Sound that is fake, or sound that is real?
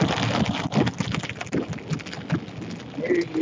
real